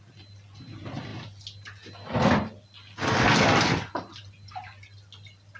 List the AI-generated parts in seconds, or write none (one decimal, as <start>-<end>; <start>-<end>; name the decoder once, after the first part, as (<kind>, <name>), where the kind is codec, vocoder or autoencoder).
none